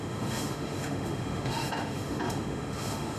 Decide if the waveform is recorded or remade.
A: remade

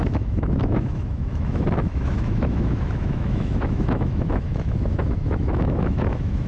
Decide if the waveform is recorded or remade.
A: remade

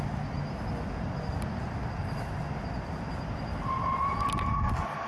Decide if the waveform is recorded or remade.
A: recorded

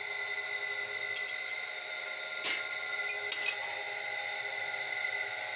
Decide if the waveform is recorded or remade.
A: recorded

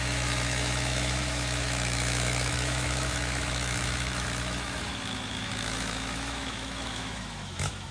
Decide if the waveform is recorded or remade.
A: remade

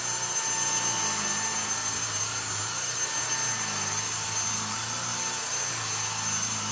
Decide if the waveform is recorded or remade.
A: recorded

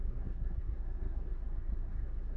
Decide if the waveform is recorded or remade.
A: remade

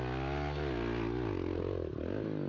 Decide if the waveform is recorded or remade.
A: recorded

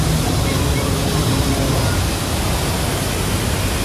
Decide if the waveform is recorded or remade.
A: recorded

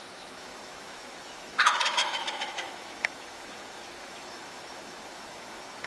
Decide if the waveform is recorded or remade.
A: remade